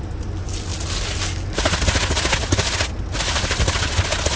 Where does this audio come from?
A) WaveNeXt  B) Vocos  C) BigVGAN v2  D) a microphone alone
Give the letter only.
D